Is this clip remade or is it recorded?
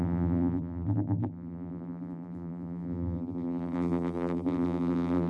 remade